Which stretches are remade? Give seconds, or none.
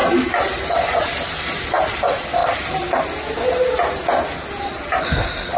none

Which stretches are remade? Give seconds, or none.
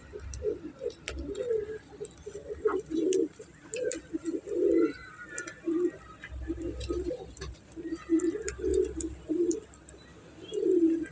none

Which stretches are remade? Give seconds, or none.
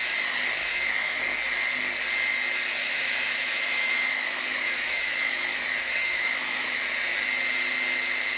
0.6-1.2; 2.8-6.8